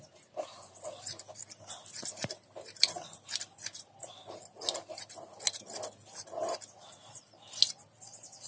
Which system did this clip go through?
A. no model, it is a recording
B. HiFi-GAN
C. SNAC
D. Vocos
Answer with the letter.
A